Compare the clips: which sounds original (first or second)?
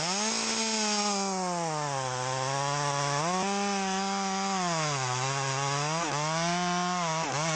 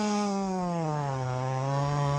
first